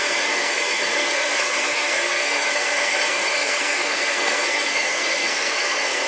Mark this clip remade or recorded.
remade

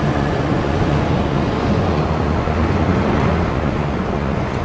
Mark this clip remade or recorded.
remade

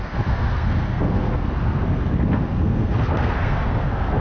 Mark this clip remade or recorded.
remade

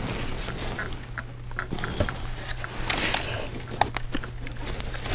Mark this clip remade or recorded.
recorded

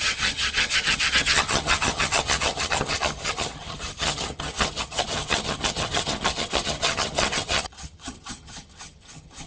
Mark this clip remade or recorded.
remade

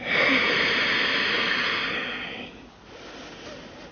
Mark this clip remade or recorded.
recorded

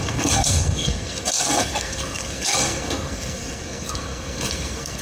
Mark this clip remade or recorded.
remade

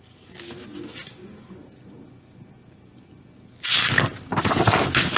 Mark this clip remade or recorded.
recorded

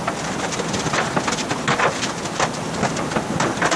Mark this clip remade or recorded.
recorded